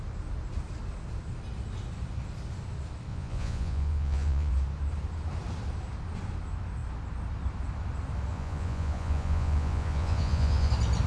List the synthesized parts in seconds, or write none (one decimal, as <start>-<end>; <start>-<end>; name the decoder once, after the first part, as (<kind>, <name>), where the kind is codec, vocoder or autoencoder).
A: 3.1-4.5 (vocoder, Vocos); 8.3-10.7